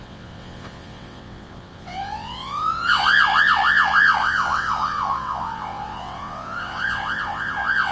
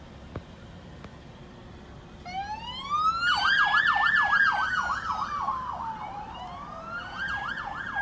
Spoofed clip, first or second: first